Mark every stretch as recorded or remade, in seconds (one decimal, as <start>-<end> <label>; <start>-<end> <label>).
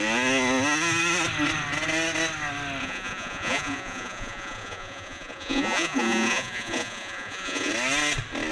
0.0-2.8 recorded; 2.8-7.7 remade; 7.7-8.5 recorded